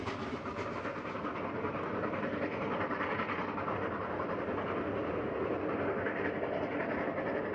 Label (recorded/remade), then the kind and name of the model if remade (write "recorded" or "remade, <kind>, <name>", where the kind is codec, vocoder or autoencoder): recorded